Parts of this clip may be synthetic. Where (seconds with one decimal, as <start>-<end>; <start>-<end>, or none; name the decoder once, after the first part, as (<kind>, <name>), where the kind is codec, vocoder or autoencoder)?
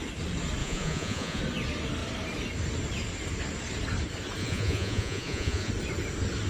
0.6-1.4 (vocoder, Vocos); 4.4-5.7